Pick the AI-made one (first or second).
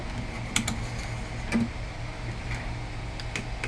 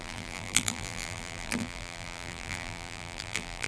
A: second